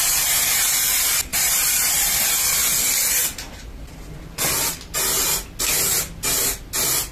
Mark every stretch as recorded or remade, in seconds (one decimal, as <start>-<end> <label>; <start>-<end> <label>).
0.0-1.3 recorded; 1.3-2.1 remade; 2.1-7.1 recorded